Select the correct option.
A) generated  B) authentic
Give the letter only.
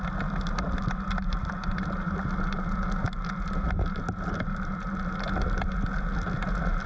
B